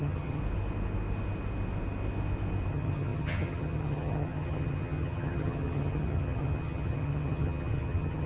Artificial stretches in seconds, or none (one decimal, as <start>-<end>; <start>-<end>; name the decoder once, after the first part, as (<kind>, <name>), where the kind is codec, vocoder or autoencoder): 0.0-0.4 (vocoder, HiFi-GAN); 2.7-8.3